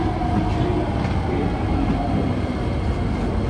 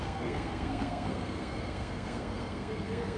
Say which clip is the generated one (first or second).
second